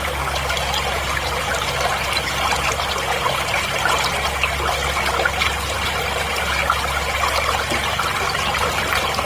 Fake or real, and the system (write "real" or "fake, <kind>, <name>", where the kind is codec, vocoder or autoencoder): real